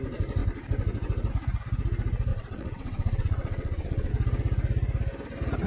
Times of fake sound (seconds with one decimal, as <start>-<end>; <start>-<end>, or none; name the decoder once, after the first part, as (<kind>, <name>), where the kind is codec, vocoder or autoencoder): 2.3-4.1 (vocoder, WaveNeXt)